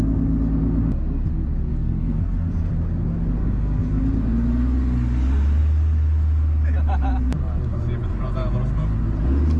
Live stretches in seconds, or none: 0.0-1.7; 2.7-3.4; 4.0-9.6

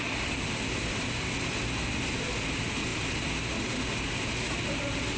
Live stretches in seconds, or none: 0.0-5.2

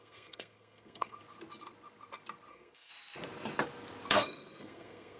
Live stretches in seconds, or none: 1.2-2.5; 2.9-4.1

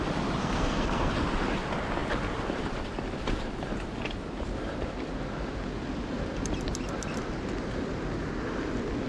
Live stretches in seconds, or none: 0.0-0.4; 1.1-9.1

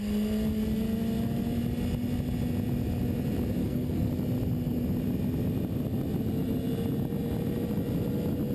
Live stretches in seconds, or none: 0.0-3.6; 4.1-8.5

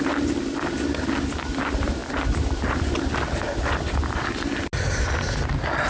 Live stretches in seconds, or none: 0.0-5.9